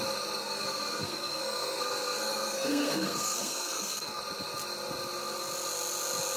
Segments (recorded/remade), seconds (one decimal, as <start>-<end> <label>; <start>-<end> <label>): 0.0-0.4 recorded; 0.4-4.2 remade; 4.2-6.4 recorded